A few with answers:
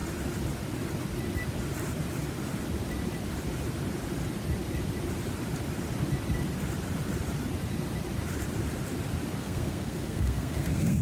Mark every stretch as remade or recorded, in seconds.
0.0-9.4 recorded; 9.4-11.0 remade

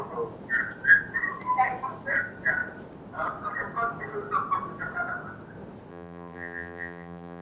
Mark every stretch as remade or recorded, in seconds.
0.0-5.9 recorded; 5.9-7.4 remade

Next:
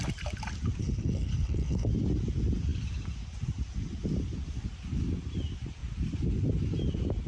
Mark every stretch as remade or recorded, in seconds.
0.0-0.8 recorded; 0.8-1.9 remade; 1.9-7.3 recorded

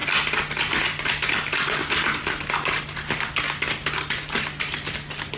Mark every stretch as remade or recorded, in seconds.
0.0-5.4 recorded

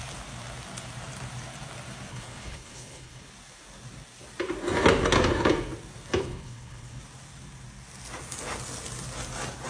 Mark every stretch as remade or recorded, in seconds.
0.0-2.1 recorded; 2.1-3.3 remade; 3.3-6.2 recorded; 6.2-7.0 remade; 7.0-9.7 recorded